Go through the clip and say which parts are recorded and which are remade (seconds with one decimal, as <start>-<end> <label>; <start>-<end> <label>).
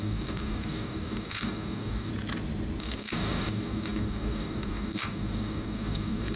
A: 0.0-2.1 remade; 2.1-2.8 recorded; 2.8-6.4 remade